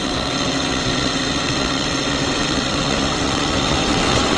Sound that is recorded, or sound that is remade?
remade